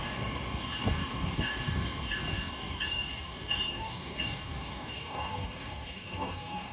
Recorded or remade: remade